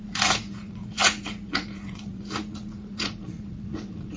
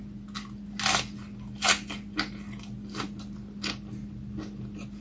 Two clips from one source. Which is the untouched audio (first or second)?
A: second